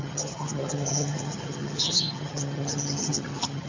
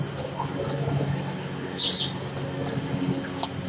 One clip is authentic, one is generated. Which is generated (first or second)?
first